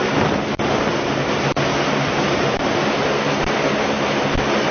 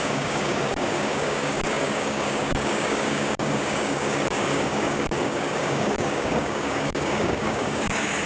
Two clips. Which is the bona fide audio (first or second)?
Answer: first